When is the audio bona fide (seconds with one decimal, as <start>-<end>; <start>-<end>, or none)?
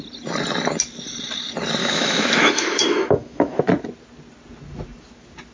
0.0-1.8; 3.6-5.5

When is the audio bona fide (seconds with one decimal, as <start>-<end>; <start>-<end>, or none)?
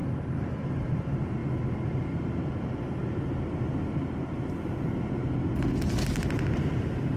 0.0-7.2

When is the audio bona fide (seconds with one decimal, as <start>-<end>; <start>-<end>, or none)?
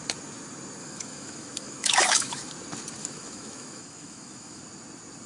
0.0-0.8; 2.5-3.0; 4.6-5.3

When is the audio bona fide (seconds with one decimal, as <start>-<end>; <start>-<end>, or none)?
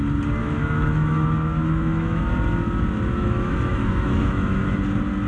0.0-0.4; 2.2-3.1; 4.6-5.3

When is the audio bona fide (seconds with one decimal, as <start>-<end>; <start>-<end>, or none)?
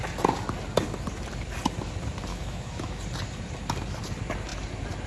0.0-2.3; 3.0-5.1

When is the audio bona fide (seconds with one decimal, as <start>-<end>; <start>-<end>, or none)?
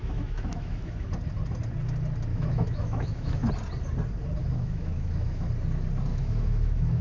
1.1-2.3; 3.5-4.4; 5.5-6.1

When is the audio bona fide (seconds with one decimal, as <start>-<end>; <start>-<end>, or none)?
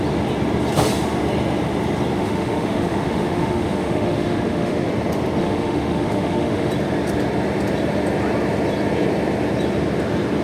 0.0-2.2; 4.9-5.4; 6.7-10.4